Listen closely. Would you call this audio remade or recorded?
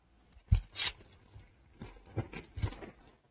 recorded